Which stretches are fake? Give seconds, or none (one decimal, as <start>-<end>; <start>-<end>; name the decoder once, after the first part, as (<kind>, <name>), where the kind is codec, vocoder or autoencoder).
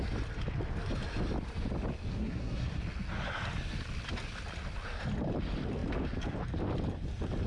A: 2.1-2.8 (codec, SNAC)